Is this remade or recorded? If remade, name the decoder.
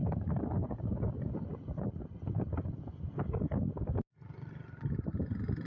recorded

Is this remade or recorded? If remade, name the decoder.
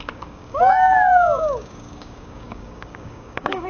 remade, codec, DAC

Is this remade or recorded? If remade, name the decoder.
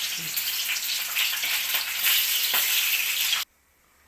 recorded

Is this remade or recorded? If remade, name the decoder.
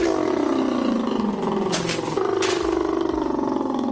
recorded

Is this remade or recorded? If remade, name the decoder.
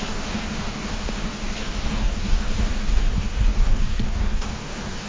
remade, codec, DAC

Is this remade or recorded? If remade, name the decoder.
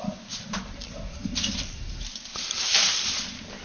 recorded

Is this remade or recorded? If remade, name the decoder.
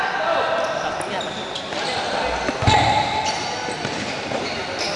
recorded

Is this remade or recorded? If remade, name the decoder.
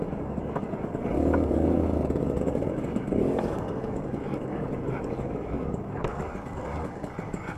remade, codec, DAC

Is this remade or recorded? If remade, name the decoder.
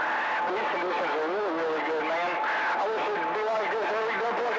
recorded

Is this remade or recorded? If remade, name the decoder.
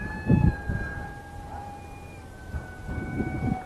recorded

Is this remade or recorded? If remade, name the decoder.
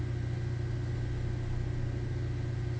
recorded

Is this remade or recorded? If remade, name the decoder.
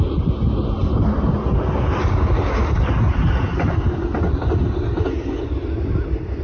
recorded